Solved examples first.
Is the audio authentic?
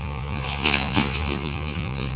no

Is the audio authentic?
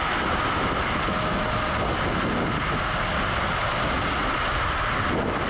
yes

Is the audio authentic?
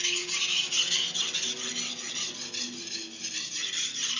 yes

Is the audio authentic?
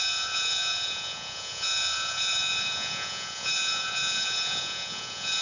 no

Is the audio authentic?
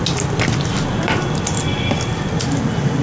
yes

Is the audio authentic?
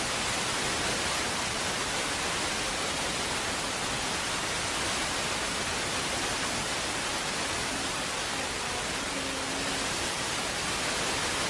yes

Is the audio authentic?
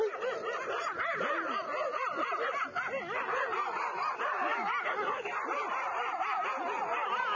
yes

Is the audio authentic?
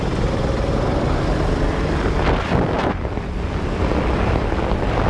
yes